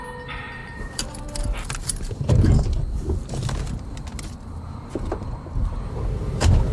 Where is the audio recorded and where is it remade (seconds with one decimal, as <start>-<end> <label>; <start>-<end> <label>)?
0.0-0.6 recorded; 0.6-3.7 remade; 3.7-6.7 recorded

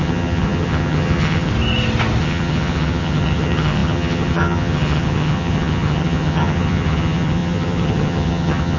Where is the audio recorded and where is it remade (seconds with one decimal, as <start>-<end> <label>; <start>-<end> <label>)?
0.0-1.5 remade; 1.5-2.2 recorded; 2.2-8.8 remade